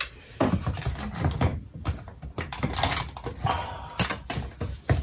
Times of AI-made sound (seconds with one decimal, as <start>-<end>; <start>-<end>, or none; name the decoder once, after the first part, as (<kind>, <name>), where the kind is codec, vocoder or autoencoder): none